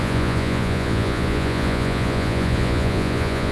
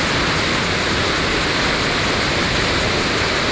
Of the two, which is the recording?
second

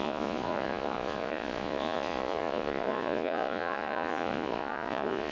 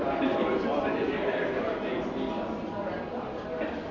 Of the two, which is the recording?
second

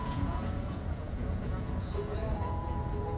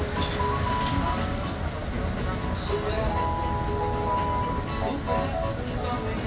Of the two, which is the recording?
second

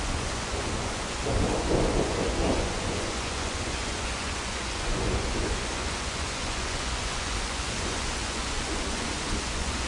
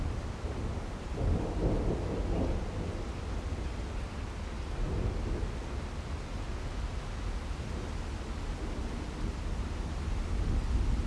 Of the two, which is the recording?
second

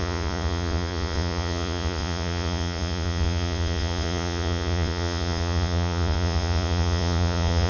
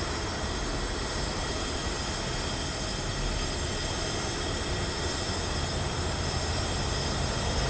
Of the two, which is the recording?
second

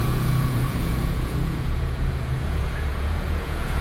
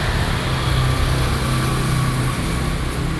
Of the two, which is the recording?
second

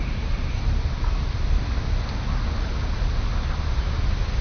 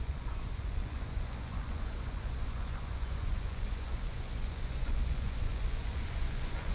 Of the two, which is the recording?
first